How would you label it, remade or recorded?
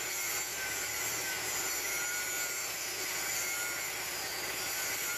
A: recorded